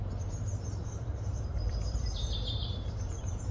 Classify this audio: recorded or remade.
remade